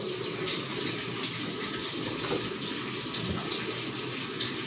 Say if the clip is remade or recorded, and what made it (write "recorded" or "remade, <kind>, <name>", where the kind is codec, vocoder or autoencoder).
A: recorded